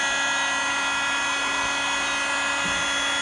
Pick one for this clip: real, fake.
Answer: real